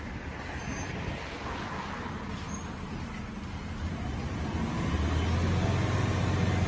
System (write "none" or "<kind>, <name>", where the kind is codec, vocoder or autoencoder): none